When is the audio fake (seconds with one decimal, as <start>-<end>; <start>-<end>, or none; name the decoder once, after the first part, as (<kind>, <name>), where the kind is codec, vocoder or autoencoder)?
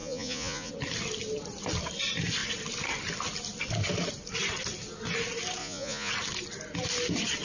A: 0.0-0.7 (vocoder, Vocos); 5.6-6.1